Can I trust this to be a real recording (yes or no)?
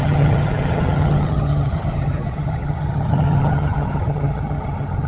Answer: no